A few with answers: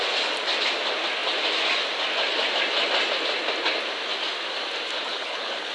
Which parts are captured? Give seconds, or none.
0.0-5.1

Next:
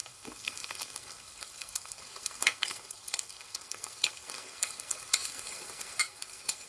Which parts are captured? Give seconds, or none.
none

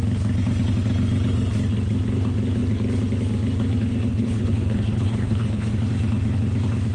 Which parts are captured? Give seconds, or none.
0.0-4.1; 5.7-6.9